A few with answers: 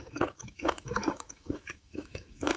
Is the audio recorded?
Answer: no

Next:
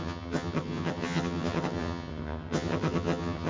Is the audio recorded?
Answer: no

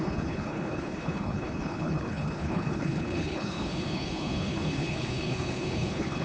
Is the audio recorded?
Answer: no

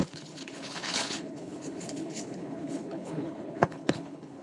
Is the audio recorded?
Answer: no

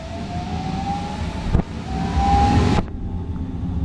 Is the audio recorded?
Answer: yes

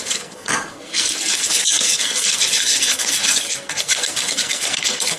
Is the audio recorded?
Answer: no